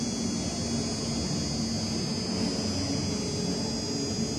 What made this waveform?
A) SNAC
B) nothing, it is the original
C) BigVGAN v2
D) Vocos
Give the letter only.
B